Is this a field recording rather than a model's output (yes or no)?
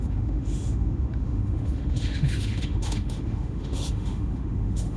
no